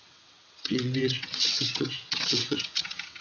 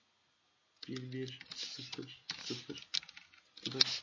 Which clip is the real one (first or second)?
second